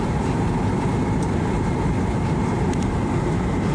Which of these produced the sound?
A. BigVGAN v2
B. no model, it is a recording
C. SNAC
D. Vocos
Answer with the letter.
A